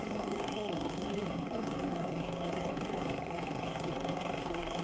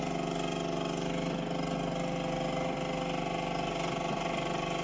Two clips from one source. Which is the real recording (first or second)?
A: second